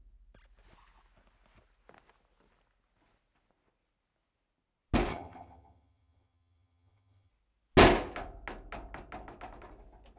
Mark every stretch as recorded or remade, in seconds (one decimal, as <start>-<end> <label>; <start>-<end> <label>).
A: 0.0-5.1 recorded; 5.1-7.3 remade; 7.3-10.2 recorded